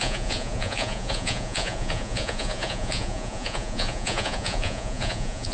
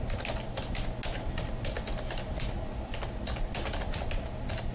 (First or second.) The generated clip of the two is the first